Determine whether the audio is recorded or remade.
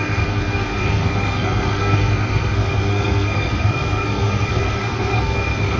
remade